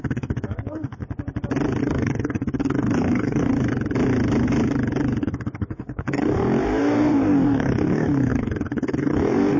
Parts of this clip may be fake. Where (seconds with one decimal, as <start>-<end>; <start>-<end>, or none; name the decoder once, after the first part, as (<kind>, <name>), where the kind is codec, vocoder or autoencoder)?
0.0-1.0 (codec, DAC); 1.8-3.5; 5.2-9.6